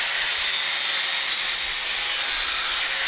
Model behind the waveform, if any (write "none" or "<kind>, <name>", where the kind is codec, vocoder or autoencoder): none